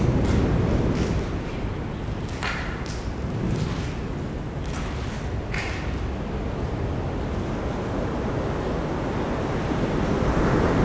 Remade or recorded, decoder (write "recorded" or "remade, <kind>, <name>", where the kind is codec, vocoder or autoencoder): recorded